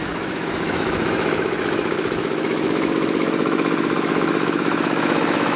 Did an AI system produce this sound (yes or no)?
yes